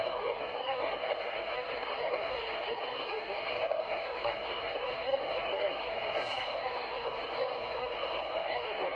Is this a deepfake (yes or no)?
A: yes